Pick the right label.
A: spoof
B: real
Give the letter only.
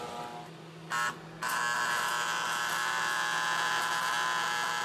B